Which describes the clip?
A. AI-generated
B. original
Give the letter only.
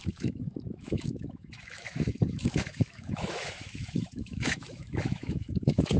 A